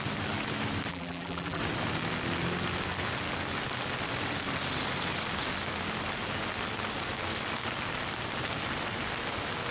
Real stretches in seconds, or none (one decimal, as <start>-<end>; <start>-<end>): 0.0-0.9; 1.6-9.7